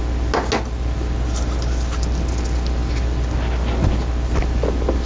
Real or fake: real